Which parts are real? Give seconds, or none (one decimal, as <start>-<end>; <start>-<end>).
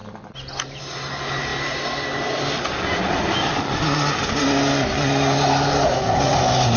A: 0.0-6.8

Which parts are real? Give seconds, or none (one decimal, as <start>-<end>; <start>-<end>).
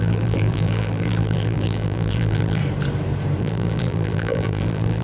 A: 2.6-3.4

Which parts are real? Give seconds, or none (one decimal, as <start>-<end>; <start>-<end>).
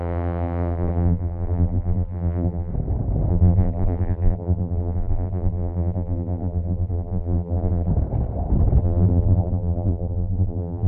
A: 2.7-3.3; 7.9-8.8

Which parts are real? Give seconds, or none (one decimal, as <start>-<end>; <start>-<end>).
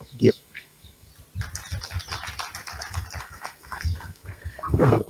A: 1.1-3.2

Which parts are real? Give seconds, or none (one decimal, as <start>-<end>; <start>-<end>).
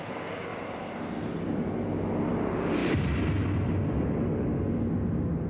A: 0.0-5.5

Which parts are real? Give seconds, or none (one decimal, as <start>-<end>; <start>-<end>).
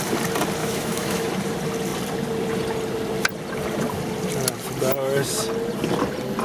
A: 0.0-0.6; 1.3-6.4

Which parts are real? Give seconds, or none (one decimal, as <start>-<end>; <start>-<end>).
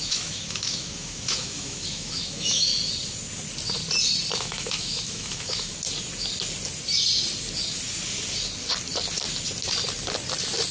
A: 2.7-4.4; 5.7-10.7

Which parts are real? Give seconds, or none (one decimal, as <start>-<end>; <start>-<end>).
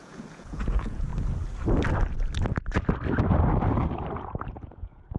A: 1.1-4.2